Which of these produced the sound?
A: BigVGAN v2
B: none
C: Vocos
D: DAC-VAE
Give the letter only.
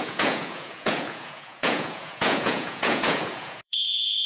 C